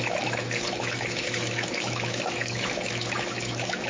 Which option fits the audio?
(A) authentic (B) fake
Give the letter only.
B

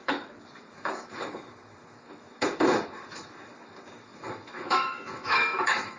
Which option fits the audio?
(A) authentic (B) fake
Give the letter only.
B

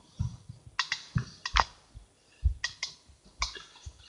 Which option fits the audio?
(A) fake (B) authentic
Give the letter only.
B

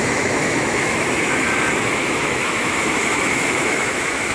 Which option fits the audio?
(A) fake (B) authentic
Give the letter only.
A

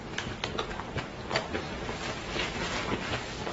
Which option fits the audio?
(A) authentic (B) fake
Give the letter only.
A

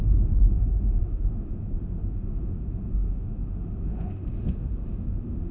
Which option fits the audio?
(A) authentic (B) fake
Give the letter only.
B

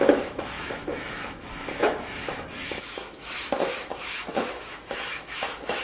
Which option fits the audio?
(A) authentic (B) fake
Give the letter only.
B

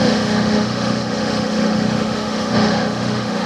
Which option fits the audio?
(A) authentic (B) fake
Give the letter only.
B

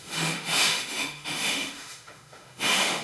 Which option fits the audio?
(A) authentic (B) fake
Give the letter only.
B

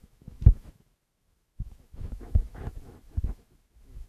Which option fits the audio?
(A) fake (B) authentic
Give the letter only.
A